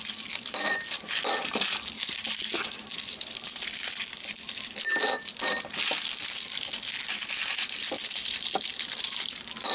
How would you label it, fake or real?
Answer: fake